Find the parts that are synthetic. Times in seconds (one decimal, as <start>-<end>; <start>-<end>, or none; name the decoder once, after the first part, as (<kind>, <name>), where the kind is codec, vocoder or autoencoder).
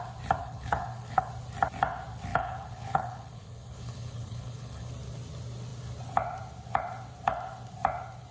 0.4-1.3 (codec, HILCodec); 2.3-4.9